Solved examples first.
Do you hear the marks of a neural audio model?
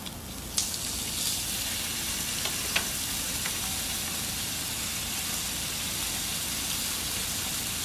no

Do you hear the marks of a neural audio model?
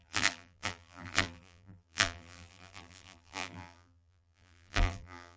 yes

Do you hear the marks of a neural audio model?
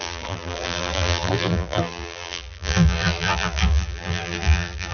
yes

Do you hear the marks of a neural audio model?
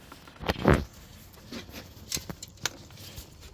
no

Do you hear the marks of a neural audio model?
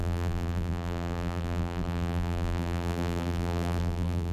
yes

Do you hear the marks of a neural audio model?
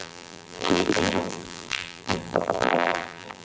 yes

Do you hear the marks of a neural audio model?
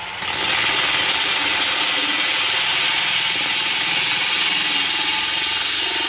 no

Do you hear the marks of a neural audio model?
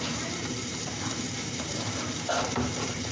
yes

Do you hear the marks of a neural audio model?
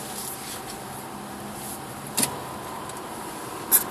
no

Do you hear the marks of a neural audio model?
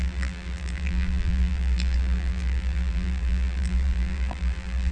yes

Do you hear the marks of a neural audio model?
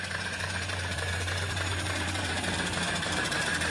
yes